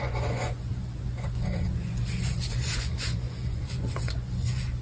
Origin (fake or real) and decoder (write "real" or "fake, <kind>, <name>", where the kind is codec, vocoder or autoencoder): fake, vocoder, Vocos